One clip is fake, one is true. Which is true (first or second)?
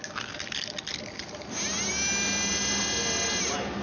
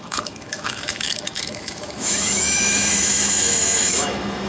first